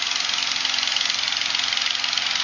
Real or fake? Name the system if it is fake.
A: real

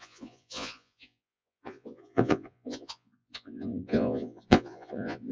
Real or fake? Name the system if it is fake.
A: fake, vocoder, Vocos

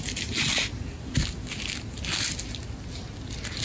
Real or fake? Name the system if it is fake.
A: real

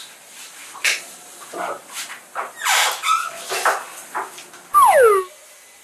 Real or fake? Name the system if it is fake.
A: real